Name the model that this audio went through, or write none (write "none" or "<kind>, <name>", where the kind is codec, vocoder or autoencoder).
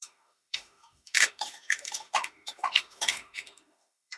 autoencoder, DAC-VAE